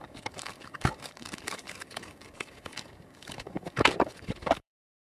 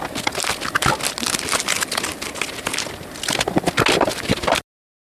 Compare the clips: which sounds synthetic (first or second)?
first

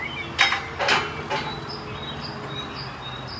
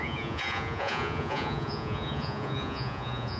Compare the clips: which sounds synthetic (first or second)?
second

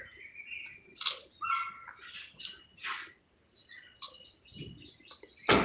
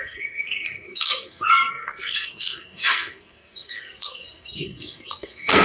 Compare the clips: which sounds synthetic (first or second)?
second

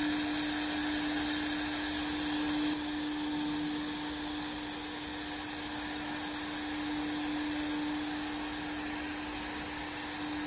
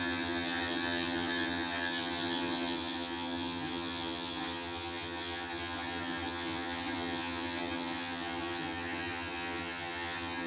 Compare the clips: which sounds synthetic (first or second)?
second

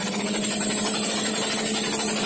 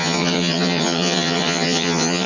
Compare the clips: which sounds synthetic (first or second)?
second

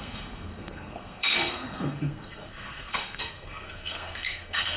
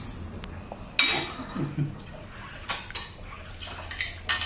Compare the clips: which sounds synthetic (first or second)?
first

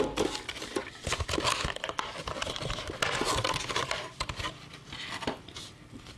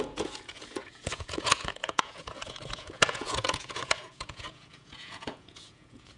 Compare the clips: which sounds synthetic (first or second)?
second